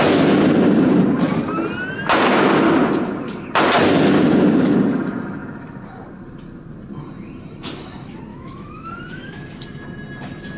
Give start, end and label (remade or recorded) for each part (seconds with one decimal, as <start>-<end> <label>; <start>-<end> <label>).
0.0-8.3 recorded; 8.3-9.4 remade; 9.4-10.6 recorded